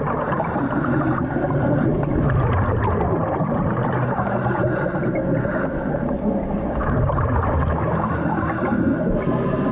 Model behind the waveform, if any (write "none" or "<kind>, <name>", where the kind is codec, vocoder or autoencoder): none